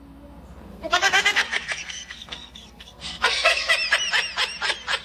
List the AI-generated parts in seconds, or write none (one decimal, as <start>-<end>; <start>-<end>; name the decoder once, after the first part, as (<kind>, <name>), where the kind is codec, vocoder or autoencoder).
0.7-3.7 (codec, SNAC)